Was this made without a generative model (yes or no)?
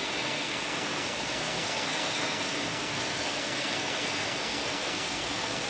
no